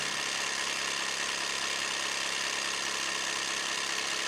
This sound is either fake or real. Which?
real